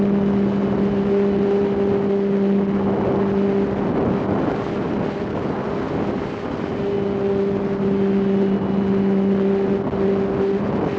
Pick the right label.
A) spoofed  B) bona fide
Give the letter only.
B